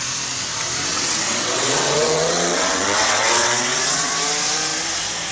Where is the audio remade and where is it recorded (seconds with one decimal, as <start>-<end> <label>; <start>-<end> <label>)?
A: 0.0-0.9 recorded; 0.9-4.1 remade; 4.1-5.3 recorded